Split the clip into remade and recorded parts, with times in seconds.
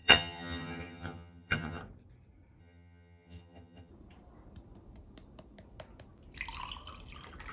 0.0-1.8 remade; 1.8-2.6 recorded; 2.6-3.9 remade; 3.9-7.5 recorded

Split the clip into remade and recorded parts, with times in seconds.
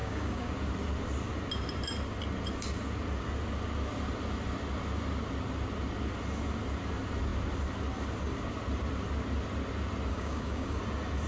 0.0-0.5 remade; 0.5-10.1 recorded; 10.1-10.8 remade; 10.8-11.3 recorded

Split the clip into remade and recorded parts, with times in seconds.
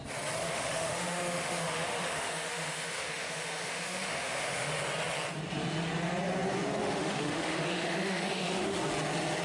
0.0-0.4 recorded; 0.4-4.8 remade; 4.8-6.8 recorded; 6.8-8.8 remade; 8.8-9.4 recorded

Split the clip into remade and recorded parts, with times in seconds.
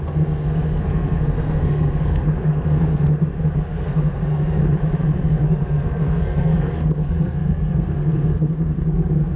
0.0-4.6 remade; 4.6-5.2 recorded; 5.2-9.4 remade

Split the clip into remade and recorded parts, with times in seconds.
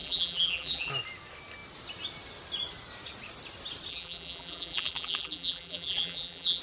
0.0-0.9 remade; 0.9-3.9 recorded; 3.9-6.6 remade